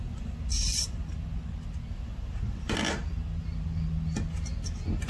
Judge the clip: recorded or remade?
recorded